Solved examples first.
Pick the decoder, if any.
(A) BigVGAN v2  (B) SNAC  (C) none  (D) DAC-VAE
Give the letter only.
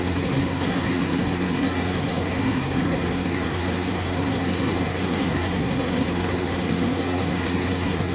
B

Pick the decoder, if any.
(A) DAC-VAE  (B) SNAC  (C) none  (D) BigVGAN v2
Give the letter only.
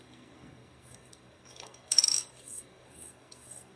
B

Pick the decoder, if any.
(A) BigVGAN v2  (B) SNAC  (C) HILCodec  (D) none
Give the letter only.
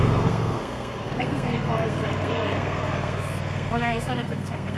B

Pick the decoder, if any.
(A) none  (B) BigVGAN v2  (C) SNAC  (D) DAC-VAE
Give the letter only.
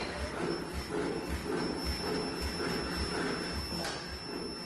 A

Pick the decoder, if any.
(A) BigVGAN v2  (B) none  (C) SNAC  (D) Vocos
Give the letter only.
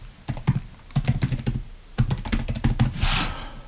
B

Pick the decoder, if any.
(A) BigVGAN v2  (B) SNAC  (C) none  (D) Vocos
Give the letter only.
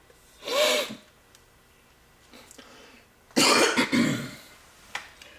C